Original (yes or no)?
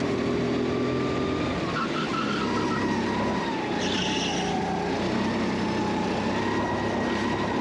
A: yes